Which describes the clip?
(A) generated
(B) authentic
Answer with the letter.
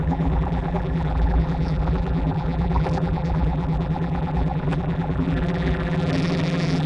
A